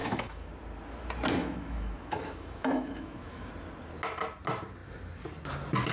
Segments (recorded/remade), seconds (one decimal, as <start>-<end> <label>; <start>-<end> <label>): 0.0-0.5 remade; 0.5-1.4 recorded; 1.4-3.5 remade; 3.5-5.9 recorded